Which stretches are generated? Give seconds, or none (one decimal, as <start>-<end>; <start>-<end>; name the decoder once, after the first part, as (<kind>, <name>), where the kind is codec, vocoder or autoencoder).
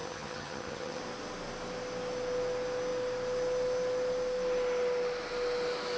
0.0-1.0 (vocoder, HiFi-GAN)